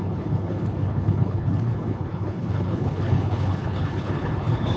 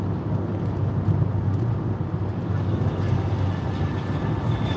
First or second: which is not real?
first